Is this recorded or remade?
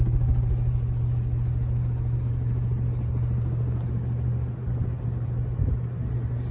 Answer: recorded